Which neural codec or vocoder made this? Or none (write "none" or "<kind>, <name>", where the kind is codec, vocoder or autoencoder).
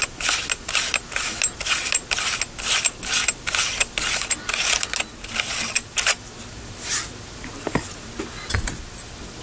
none